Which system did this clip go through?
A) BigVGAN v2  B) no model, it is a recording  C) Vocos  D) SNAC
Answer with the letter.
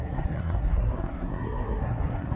D